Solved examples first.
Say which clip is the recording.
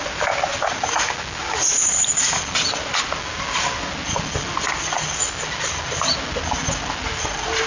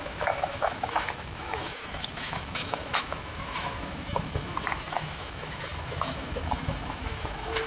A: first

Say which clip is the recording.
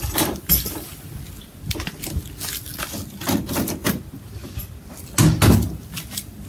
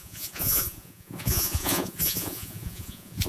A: first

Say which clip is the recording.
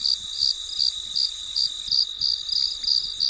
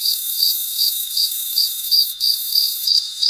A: first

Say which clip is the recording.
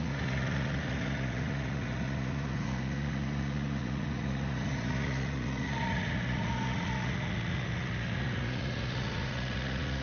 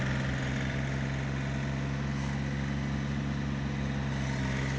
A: second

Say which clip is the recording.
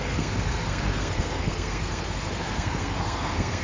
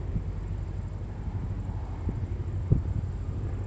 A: second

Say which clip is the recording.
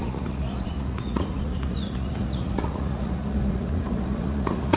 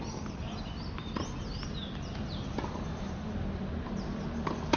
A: second